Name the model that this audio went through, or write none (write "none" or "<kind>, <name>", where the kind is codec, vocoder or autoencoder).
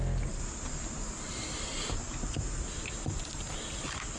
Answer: none